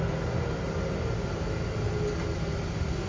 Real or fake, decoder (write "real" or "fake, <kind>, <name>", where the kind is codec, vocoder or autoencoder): real